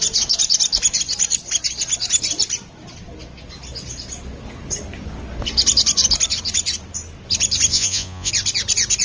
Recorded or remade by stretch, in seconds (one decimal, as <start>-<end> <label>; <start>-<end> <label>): 0.0-7.7 recorded; 7.7-8.3 remade; 8.3-9.0 recorded